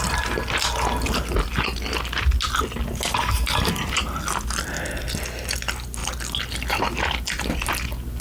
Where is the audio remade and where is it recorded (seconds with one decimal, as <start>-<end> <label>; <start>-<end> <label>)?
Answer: 0.0-8.2 recorded